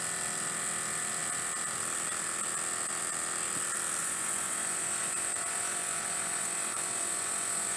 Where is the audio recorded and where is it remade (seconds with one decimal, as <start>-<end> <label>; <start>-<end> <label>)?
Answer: 0.0-4.0 recorded; 4.0-7.8 remade